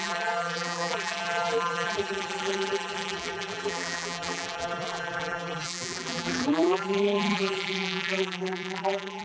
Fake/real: fake